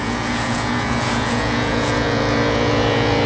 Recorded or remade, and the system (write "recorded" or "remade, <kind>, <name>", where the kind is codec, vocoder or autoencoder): remade, vocoder, Vocos